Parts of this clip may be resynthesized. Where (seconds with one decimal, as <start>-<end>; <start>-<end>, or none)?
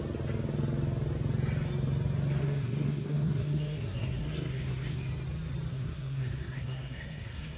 2.4-5.0; 5.7-7.6